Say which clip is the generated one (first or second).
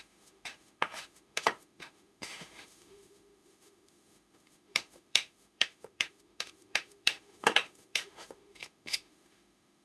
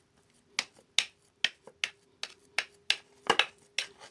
first